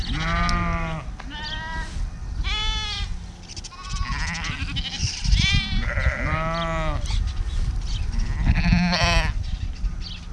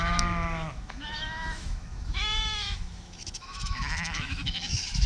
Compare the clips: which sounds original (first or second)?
first